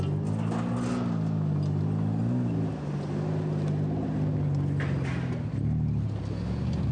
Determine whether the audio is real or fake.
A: real